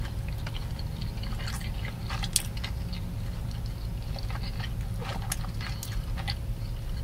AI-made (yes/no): no